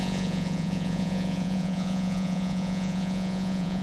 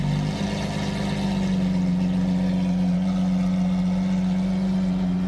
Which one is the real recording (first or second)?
second